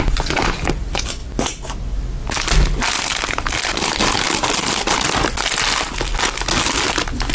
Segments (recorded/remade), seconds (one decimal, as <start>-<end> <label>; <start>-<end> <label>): 0.0-7.3 recorded